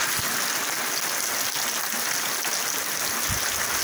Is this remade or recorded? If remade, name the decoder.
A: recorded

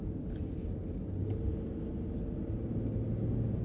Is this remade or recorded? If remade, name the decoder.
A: recorded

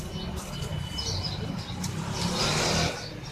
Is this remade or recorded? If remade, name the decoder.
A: recorded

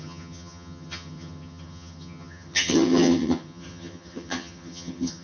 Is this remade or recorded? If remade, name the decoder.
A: remade, vocoder, HiFi-GAN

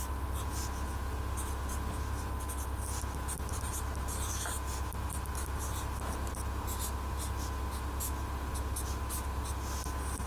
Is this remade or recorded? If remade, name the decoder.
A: recorded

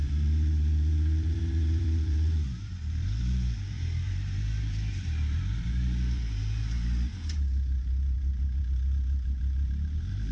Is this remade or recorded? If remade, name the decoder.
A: remade, vocoder, BigVGAN v2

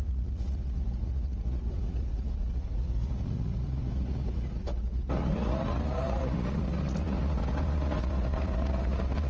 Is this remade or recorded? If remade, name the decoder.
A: remade, vocoder, Vocos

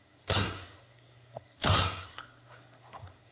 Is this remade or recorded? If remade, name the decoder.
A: remade, codec, SNAC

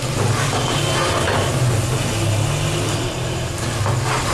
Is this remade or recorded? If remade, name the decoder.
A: recorded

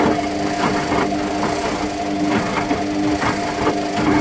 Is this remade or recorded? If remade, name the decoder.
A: recorded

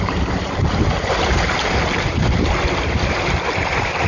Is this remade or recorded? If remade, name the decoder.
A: recorded